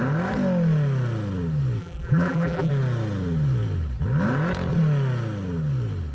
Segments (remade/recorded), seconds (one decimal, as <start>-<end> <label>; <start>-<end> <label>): 0.0-1.8 recorded; 1.8-2.7 remade; 2.7-6.1 recorded